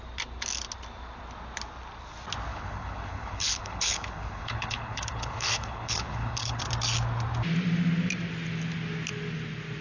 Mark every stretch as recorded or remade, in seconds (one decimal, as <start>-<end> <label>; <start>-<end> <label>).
0.0-2.5 recorded; 2.5-6.6 remade; 6.6-9.8 recorded